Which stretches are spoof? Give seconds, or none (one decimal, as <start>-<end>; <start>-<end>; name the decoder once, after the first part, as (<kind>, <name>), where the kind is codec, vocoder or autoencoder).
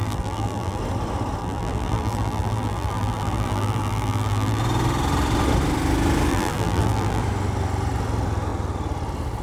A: 0.0-0.8 (vocoder, BigVGAN v2); 1.4-4.6; 6.3-7.2